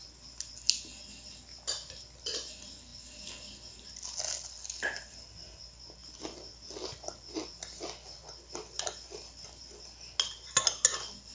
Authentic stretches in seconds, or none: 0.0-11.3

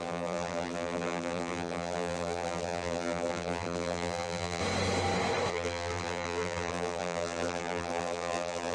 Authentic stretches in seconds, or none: 4.6-5.5